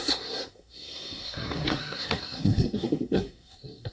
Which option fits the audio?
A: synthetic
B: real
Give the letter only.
A